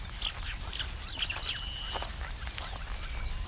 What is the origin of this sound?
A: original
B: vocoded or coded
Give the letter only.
A